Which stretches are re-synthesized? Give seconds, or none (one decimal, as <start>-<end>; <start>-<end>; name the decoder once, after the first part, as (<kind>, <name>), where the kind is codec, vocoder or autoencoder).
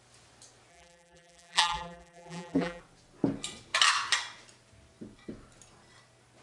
0.7-2.8 (vocoder, BigVGAN v2)